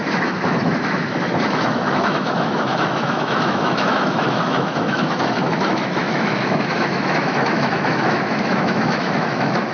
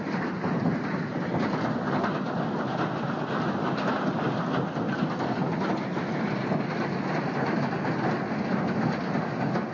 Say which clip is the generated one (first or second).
first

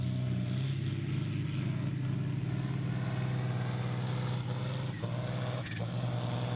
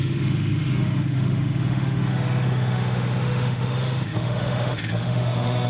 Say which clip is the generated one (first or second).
second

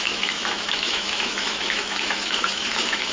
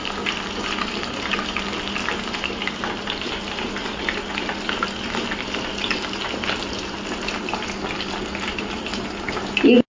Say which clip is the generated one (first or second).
first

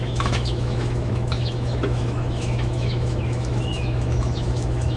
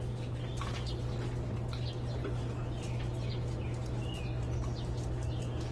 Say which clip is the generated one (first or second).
first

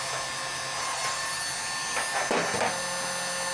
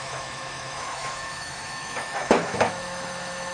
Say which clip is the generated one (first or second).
second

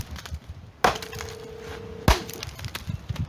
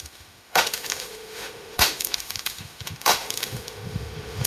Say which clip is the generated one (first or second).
second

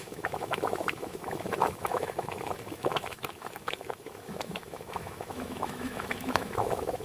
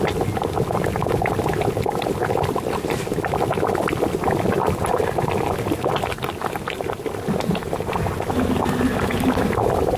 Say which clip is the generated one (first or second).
first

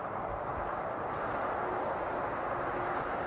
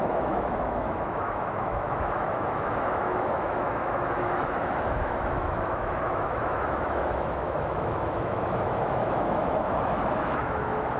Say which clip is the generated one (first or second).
second